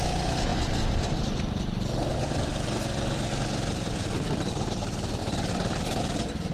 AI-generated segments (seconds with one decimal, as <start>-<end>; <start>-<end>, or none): 0.0-5.2; 6.0-6.5